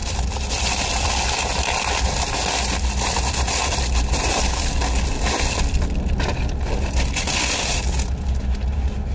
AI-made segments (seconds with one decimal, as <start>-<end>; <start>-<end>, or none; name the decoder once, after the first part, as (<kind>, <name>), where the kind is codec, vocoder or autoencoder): 0.0-1.1 (vocoder, BigVGAN v2)